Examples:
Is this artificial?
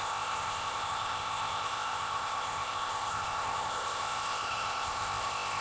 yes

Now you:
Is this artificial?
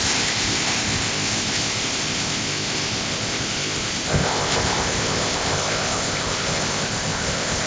yes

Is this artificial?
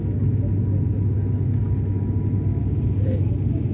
no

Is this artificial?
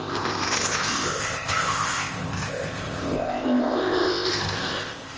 yes